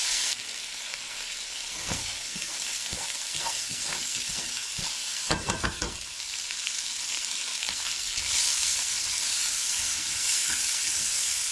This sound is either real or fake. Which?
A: fake